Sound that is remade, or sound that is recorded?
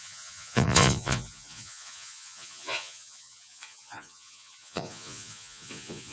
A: remade